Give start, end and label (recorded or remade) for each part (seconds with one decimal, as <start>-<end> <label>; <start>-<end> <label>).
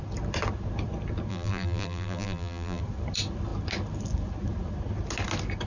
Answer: 0.0-1.3 recorded; 1.3-2.8 remade; 2.8-5.7 recorded